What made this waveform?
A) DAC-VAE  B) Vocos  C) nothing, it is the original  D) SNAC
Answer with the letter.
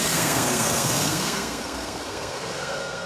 D